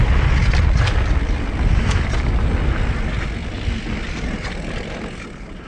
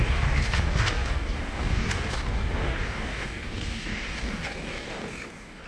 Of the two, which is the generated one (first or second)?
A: second